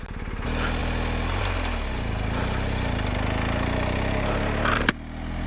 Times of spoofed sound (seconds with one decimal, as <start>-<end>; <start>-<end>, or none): none

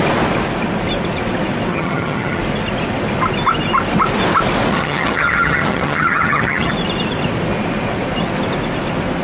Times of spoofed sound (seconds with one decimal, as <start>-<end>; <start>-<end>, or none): 1.7-2.4; 4.7-6.7

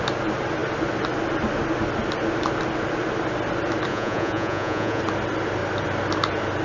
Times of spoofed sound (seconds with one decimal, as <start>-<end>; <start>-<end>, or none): 3.9-5.0